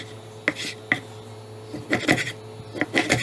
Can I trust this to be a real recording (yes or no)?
yes